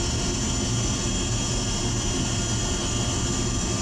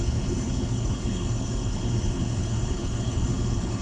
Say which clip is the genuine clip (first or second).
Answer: first